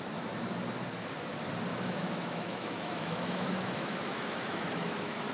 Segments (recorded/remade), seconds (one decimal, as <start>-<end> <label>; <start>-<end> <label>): 0.0-1.7 recorded; 1.7-5.3 remade